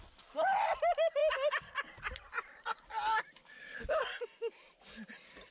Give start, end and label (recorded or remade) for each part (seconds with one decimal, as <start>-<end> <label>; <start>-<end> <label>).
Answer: 0.0-3.4 recorded; 3.4-4.0 remade; 4.0-5.5 recorded